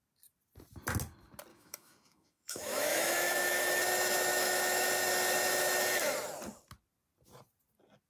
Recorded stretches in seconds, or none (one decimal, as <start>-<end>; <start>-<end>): 0.0-1.5; 3.7-4.3; 4.9-8.1

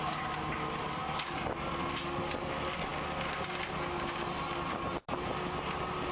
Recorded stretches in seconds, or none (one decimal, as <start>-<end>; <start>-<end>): 0.0-6.1

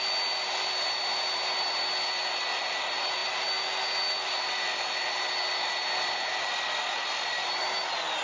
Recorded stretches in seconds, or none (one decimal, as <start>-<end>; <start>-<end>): 0.0-8.2